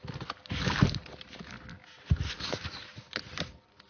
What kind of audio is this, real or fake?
real